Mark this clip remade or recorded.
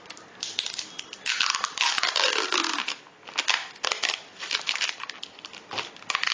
recorded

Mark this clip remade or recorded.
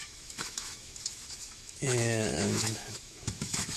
remade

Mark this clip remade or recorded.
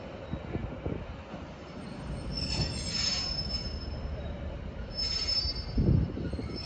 recorded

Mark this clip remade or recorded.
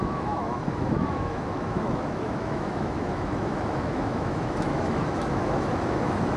remade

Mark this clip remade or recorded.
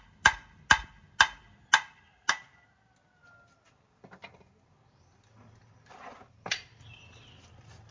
recorded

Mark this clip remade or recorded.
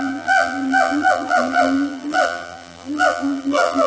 remade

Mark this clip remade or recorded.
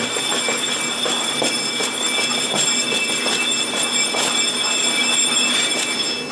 recorded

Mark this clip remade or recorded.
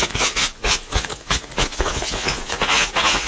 remade